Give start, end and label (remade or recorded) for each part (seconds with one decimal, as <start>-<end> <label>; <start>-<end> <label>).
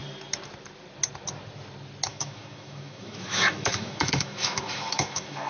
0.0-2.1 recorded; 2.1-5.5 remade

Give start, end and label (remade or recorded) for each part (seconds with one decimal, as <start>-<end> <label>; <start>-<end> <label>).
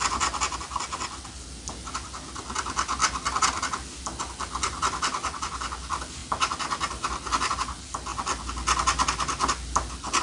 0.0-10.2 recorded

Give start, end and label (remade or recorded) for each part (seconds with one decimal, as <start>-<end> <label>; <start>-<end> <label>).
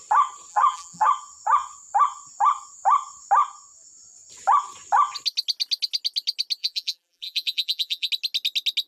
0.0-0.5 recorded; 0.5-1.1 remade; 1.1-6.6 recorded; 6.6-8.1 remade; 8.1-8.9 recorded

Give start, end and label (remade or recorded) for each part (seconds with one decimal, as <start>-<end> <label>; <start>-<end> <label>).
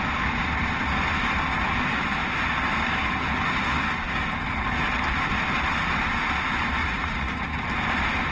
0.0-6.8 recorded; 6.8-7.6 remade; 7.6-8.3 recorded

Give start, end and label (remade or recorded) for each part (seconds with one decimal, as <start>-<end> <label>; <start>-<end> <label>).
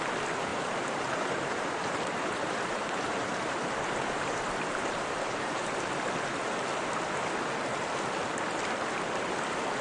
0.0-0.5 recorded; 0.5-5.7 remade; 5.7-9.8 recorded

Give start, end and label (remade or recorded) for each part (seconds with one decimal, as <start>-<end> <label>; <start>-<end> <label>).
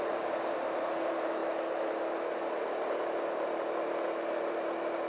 0.0-5.1 recorded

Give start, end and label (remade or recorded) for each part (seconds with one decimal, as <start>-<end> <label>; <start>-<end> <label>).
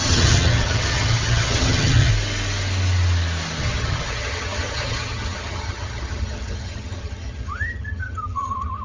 0.0-2.1 remade; 2.1-3.6 recorded; 3.6-8.8 remade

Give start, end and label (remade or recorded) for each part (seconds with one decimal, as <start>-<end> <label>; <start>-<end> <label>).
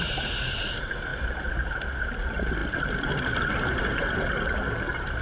0.0-2.6 recorded; 2.6-3.8 remade; 3.8-5.2 recorded